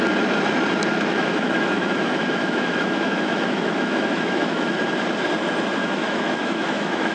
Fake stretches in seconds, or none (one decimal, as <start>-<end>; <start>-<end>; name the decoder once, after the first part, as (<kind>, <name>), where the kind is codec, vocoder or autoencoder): 0.9-4.7 (autoencoder, DAC-VAE); 5.8-7.1